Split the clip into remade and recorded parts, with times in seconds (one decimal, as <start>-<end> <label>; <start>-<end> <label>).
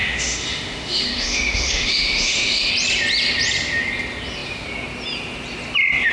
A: 0.0-2.7 remade; 2.7-6.1 recorded